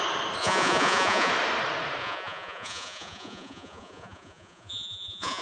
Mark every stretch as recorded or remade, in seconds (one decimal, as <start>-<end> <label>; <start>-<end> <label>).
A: 0.0-0.4 recorded; 0.4-1.3 remade; 1.3-2.0 recorded; 2.0-5.4 remade